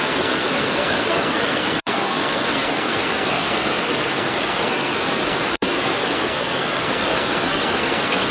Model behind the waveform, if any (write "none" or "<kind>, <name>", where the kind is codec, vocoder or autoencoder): codec, SNAC